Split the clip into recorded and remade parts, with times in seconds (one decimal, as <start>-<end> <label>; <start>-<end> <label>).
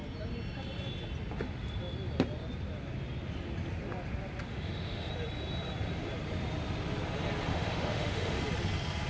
0.0-4.5 recorded; 4.5-5.1 remade; 5.1-7.5 recorded; 7.5-8.4 remade; 8.4-9.1 recorded